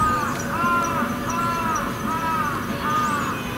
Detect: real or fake real